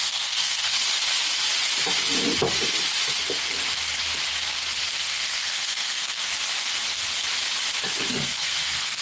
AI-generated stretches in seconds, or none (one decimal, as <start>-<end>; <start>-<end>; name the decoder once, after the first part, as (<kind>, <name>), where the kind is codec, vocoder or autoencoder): 0.0-0.8 (codec, SNAC); 5.0-6.3; 8.1-9.0